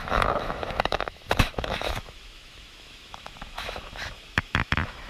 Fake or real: fake